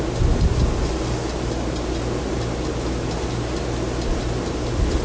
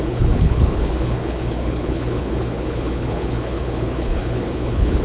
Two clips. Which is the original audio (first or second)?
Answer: first